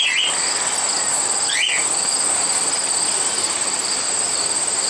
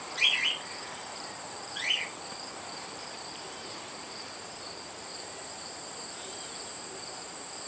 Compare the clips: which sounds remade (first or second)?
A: second